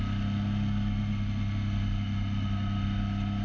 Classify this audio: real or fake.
real